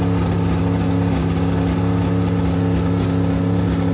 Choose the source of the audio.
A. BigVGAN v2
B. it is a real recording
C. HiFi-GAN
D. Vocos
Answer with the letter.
B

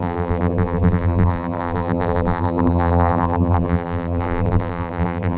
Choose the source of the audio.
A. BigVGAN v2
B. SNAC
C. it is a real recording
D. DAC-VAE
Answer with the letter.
A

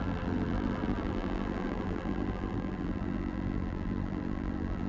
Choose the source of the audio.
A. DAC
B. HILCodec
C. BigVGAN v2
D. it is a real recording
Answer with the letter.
C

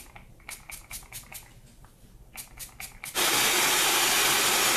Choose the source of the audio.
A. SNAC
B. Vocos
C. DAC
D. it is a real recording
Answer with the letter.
D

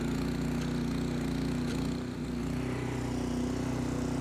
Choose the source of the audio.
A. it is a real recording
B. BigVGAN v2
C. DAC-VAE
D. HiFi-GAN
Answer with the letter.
A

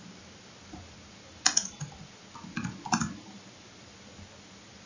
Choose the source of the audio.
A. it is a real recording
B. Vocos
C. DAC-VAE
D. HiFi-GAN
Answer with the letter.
A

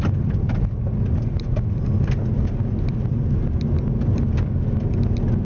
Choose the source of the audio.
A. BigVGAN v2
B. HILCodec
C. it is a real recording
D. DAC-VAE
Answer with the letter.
C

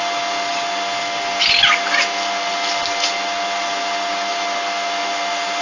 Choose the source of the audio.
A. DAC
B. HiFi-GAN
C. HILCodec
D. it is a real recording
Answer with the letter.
D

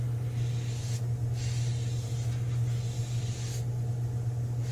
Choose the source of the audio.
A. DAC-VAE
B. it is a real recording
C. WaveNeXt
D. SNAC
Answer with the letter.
B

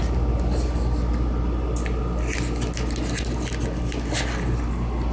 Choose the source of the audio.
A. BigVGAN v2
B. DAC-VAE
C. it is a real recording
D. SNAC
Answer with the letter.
C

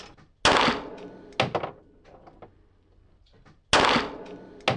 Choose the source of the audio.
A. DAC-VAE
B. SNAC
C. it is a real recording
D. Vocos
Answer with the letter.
C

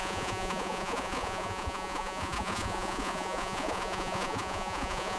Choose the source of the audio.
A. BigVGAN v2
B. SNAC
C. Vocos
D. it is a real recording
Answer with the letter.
C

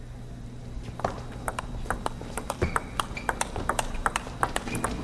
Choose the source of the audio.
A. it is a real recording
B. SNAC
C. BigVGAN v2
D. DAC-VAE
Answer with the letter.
A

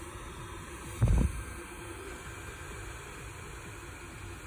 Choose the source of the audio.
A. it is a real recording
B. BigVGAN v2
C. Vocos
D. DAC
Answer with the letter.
A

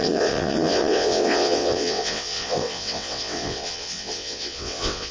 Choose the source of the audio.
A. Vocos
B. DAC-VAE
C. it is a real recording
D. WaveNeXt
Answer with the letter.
D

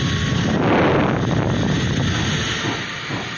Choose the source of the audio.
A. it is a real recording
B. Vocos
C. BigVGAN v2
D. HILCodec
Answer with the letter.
A